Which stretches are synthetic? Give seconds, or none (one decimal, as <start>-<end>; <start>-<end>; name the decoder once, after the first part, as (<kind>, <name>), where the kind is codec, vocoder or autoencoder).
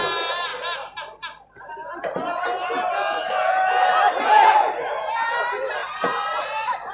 5.8-6.4 (vocoder, BigVGAN v2)